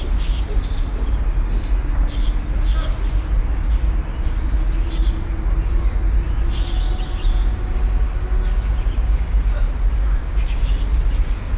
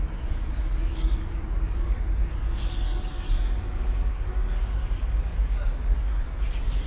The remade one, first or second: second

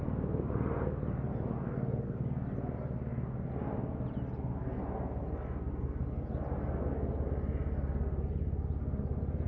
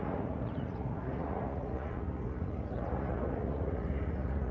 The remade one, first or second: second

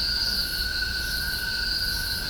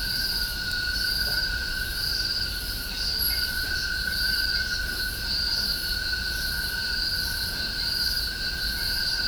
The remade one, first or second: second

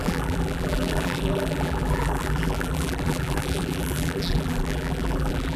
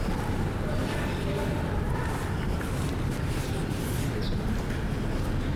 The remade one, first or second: first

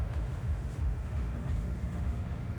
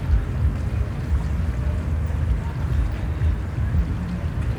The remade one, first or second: first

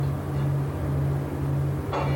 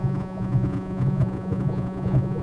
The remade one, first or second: second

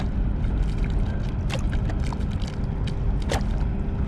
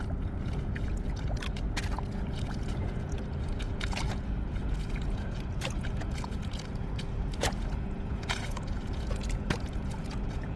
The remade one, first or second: second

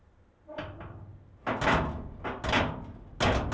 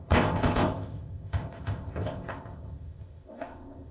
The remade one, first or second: second